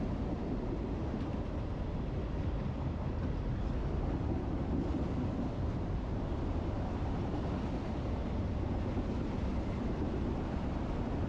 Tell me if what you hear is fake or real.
real